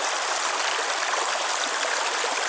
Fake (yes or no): no